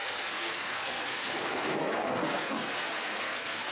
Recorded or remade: remade